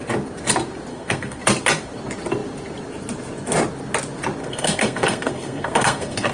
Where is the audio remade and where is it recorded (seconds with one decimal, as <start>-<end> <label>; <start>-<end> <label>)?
0.0-0.9 recorded; 0.9-1.4 remade; 1.4-4.4 recorded; 4.4-6.3 remade